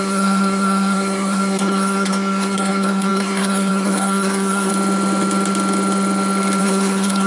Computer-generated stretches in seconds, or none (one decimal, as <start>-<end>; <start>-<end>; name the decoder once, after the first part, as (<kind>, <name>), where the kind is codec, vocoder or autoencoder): 0.0-4.7 (codec, SNAC); 6.6-7.3

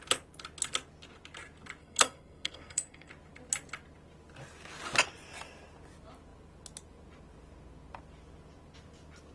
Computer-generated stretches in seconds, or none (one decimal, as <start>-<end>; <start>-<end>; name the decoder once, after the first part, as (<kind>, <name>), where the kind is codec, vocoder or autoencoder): 1.8-3.1 (codec, SNAC)

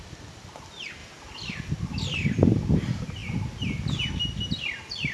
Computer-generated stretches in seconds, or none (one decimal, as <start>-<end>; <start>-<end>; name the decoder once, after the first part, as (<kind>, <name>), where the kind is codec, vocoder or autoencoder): none

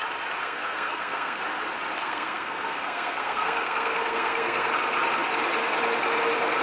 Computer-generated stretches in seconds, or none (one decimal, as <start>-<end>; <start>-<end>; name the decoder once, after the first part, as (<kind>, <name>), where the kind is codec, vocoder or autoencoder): 0.4-1.4 (codec, SNAC); 2.0-4.7

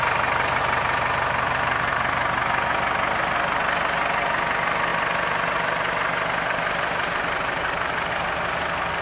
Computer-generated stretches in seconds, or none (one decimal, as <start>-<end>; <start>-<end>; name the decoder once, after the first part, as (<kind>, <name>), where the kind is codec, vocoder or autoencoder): none

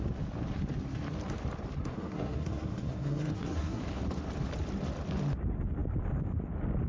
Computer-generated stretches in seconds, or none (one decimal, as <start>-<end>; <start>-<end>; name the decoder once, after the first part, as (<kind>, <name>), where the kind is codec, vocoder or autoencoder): 1.8-3.8 (codec, SNAC)

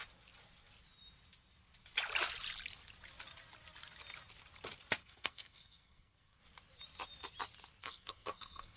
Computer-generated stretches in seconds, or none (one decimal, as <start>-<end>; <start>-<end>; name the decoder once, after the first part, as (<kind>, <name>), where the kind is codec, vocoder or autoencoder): 5.0-6.4 (codec, SNAC); 7.8-8.8